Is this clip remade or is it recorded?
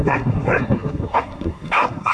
remade